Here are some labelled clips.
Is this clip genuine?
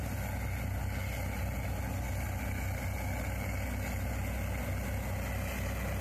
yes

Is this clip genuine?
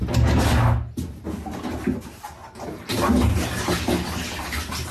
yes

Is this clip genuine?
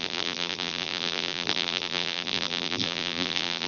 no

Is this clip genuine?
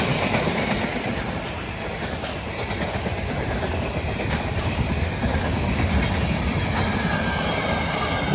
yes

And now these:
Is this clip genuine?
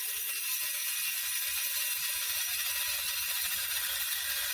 yes